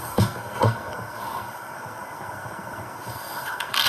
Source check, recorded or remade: remade